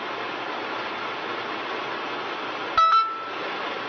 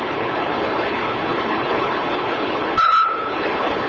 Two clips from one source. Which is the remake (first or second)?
second